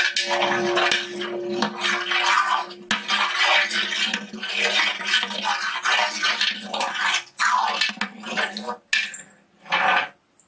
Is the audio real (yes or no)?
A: yes